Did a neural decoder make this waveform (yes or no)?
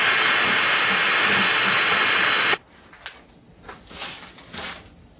no